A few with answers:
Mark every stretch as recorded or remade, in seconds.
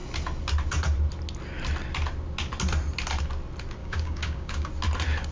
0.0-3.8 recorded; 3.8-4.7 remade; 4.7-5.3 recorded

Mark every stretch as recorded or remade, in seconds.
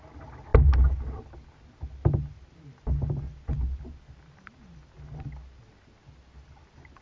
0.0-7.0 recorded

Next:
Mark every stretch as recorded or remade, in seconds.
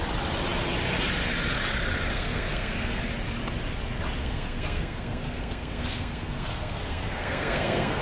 0.0-2.1 recorded; 2.1-3.0 remade; 3.0-4.2 recorded; 4.2-8.0 remade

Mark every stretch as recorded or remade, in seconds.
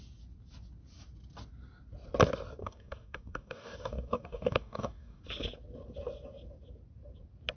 0.0-2.6 recorded; 2.6-5.2 remade; 5.2-7.6 recorded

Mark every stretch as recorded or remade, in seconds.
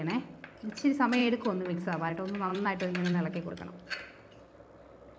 0.0-1.2 recorded; 1.2-2.1 remade; 2.1-2.5 recorded; 2.5-3.5 remade; 3.5-5.2 recorded